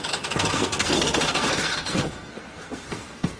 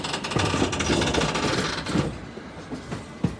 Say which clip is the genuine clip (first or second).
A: second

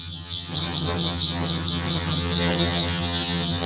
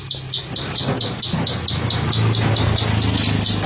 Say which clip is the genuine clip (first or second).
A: second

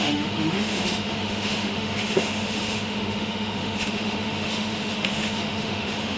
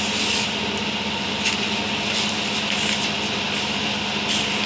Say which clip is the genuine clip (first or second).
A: second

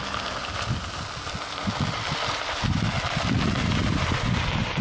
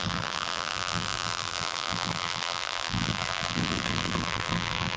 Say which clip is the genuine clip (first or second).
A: first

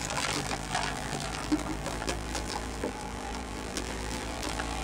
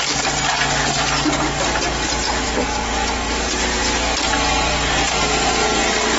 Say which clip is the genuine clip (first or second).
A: second